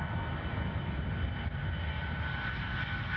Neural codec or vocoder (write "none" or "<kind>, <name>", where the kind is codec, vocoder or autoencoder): none